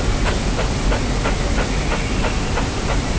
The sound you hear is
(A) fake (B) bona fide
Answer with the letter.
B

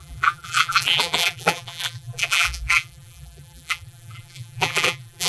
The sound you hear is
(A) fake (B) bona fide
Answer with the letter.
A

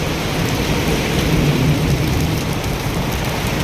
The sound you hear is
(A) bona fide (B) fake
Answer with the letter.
B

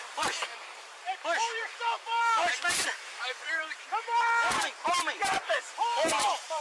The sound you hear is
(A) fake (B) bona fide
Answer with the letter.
A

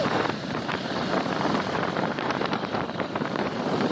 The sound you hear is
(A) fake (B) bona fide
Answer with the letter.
A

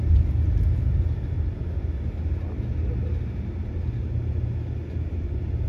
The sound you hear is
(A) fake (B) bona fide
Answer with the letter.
B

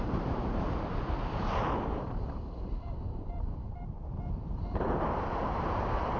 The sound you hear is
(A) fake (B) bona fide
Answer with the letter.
A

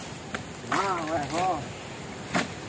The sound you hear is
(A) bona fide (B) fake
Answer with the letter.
A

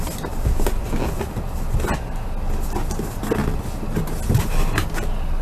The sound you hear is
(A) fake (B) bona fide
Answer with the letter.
B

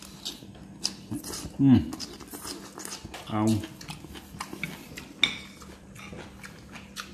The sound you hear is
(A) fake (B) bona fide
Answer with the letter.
B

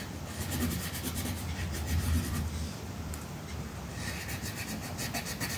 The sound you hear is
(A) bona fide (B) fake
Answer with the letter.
B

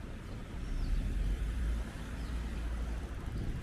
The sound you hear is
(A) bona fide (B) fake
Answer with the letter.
B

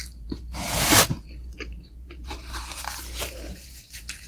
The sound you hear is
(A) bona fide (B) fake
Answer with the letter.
B